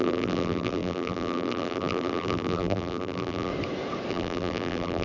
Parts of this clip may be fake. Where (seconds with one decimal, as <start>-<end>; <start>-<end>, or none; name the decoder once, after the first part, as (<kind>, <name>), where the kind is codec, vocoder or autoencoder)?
0.0-3.5 (vocoder, BigVGAN v2); 4.1-5.0